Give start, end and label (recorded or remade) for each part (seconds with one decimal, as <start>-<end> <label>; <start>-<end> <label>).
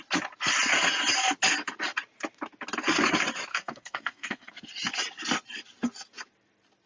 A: 0.0-3.5 recorded; 3.5-4.5 remade; 4.5-6.9 recorded